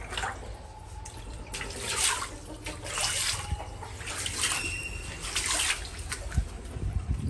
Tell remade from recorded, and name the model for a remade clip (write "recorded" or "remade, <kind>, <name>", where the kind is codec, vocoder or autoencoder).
recorded